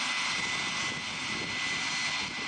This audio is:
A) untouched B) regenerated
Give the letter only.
A